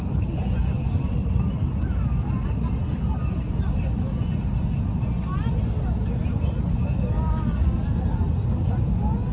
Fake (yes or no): no